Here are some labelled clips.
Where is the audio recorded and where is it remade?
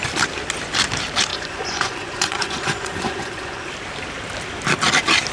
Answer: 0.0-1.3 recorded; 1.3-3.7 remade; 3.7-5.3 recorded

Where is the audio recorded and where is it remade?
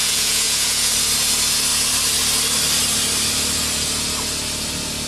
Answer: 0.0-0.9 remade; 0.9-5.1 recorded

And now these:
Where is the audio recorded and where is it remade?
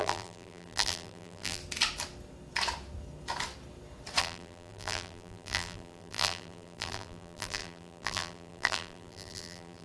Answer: 0.0-1.6 remade; 1.6-4.2 recorded; 4.2-9.8 remade